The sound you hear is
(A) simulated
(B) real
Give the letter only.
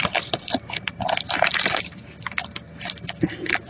B